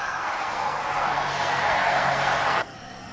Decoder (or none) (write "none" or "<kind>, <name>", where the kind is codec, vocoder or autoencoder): codec, SNAC